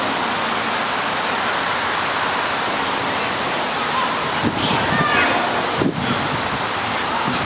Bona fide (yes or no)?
yes